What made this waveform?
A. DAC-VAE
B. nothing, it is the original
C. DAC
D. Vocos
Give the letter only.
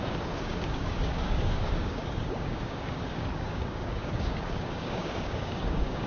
C